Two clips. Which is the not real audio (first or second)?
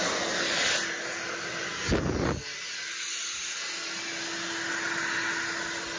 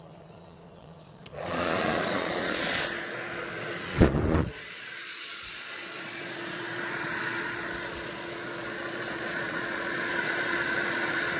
second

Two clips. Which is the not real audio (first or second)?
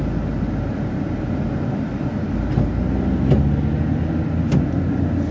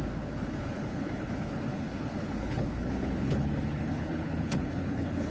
second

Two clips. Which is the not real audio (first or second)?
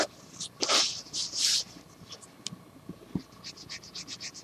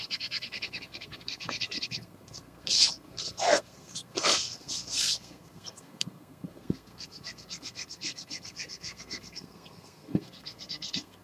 second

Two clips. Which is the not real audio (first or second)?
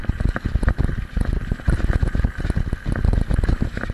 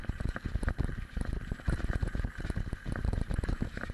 second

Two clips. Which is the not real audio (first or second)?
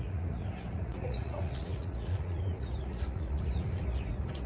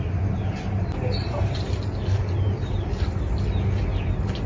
first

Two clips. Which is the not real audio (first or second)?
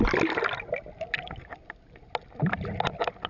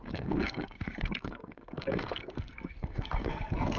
second